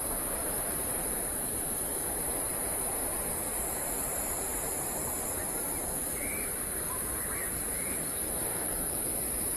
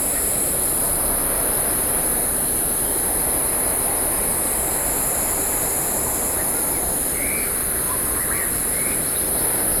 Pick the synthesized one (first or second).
first